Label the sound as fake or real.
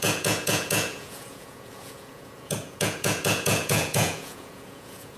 fake